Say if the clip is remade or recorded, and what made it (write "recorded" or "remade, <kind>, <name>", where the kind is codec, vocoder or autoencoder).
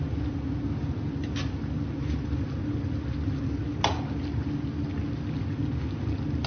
recorded